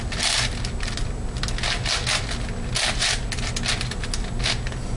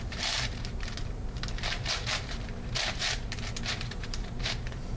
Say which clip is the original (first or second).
first